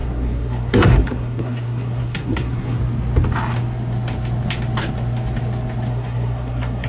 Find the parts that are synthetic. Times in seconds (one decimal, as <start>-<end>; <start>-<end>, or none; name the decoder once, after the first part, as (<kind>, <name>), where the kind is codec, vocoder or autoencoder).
0.0-2.8 (codec, SNAC); 5.9-6.9